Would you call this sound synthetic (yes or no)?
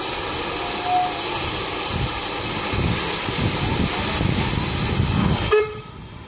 no